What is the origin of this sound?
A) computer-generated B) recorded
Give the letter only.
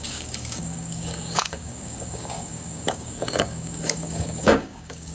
A